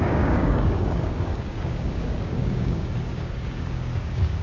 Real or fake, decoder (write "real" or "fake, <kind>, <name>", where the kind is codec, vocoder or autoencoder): fake, codec, DAC